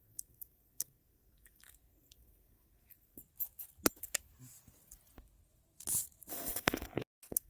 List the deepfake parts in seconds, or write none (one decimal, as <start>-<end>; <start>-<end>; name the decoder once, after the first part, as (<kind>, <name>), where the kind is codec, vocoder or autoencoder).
0.0-3.2 (codec, SNAC); 6.3-7.5